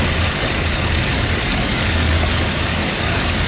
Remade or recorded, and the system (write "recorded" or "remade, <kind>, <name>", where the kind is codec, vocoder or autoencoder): remade, codec, DAC